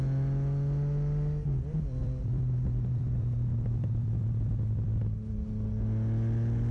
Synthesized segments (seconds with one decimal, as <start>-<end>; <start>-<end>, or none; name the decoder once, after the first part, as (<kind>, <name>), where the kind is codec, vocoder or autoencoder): 2.0-5.0 (vocoder, BigVGAN v2)